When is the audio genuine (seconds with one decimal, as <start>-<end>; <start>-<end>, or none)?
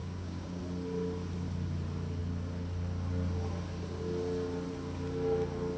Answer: 0.6-5.8